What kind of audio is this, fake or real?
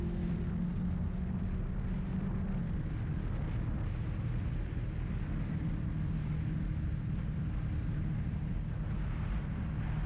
real